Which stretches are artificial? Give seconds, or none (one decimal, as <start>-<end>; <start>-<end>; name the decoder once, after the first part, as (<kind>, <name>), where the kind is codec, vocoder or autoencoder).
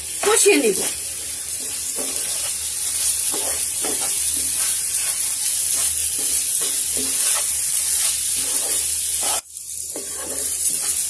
none